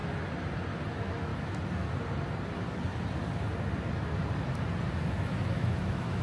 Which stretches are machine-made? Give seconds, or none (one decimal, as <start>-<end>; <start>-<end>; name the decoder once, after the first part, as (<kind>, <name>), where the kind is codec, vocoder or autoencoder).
0.9-1.3 (autoencoder, DAC-VAE); 5.0-6.2